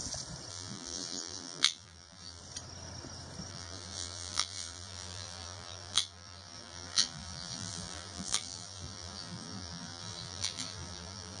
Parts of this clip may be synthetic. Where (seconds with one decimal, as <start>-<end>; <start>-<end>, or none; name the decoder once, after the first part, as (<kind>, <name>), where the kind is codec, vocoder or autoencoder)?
0.5-2.4 (vocoder, BigVGAN v2); 3.5-11.4